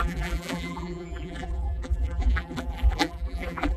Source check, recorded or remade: remade